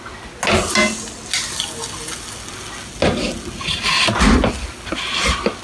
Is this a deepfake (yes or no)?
no